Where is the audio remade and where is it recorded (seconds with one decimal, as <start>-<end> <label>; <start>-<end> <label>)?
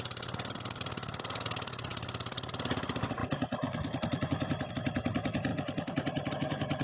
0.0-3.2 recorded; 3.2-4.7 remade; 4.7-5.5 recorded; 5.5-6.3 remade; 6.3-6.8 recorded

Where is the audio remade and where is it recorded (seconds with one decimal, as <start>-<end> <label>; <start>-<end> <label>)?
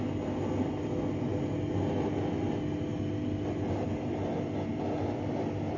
0.0-5.8 recorded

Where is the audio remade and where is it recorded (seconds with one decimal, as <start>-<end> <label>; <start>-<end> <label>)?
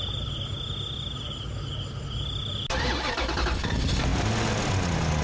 0.0-5.2 recorded